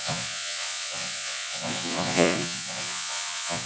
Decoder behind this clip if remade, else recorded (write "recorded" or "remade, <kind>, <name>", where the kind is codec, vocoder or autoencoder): remade, vocoder, Vocos